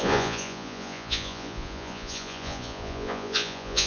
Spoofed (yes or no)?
yes